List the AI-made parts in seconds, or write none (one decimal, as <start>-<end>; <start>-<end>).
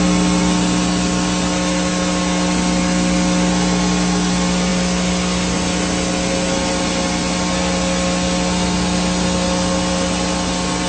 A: none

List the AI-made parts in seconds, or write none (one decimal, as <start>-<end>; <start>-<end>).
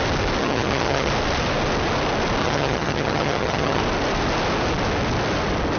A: 0.4-1.1; 2.4-3.8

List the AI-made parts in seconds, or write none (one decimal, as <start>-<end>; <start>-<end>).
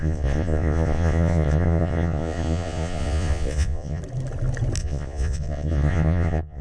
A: 0.0-4.0; 4.8-6.6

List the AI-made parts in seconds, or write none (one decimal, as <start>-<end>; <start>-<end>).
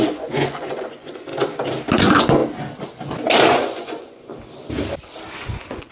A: 0.0-1.3; 1.9-2.4; 3.5-4.3; 5.3-5.9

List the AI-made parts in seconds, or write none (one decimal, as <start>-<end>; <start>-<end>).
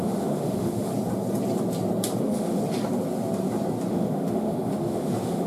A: 0.0-0.9; 2.2-2.6; 3.9-5.5